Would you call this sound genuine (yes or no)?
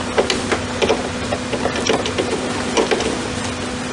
yes